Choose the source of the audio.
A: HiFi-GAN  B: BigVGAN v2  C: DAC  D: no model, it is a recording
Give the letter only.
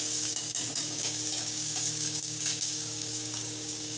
C